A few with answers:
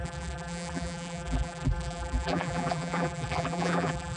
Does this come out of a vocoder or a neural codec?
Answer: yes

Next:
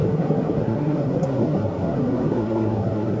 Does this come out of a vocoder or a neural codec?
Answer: yes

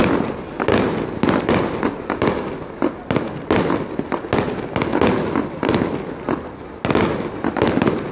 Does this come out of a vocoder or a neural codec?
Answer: no